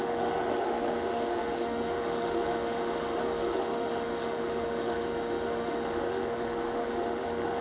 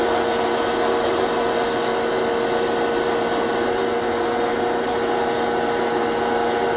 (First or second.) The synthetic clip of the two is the first